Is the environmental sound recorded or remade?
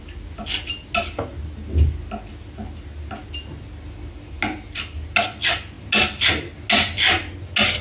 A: recorded